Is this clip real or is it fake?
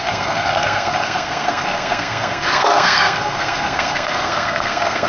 fake